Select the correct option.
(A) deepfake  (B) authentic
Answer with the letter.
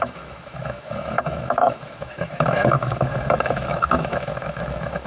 A